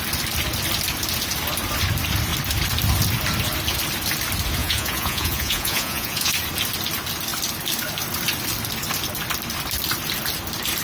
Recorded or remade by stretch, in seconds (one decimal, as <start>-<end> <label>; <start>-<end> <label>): 0.0-4.6 recorded; 4.6-6.3 remade; 6.3-10.8 recorded